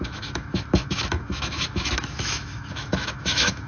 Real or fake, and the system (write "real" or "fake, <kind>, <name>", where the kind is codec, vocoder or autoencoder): fake, autoencoder, DAC-VAE